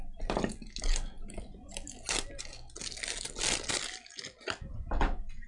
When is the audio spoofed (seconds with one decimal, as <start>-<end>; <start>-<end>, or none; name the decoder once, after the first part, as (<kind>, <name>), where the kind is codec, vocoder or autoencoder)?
none